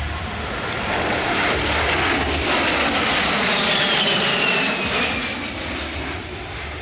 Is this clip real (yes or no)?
yes